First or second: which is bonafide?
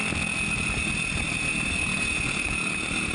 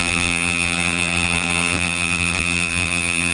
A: first